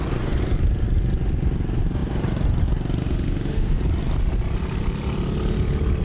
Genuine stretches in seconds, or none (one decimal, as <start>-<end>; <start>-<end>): 0.0-3.0; 3.8-6.0

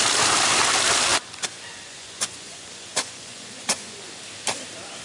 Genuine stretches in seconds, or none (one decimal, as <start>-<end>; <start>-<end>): 0.0-1.1; 4.1-5.0

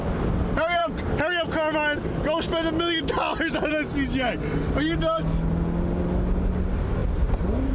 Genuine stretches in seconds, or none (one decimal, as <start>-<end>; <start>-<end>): 0.0-7.0